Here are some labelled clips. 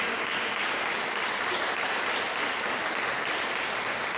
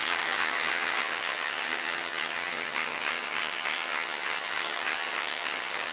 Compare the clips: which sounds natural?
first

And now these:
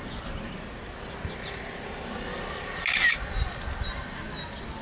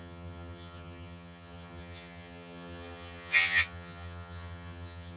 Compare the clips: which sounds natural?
first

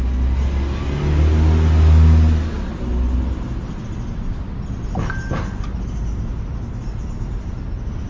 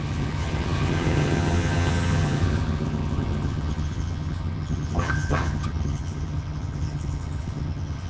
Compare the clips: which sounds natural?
first